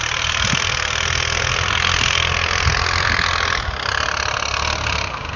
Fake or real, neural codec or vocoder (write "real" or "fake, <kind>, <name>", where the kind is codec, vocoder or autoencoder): real